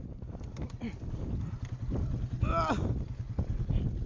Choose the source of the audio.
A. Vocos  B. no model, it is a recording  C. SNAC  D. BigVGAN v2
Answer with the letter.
B